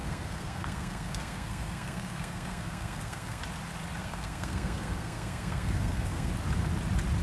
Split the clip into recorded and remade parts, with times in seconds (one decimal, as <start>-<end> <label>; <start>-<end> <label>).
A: 0.0-3.4 remade; 3.4-4.0 recorded; 4.0-6.3 remade; 6.3-7.2 recorded